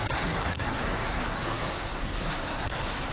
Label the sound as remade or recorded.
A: remade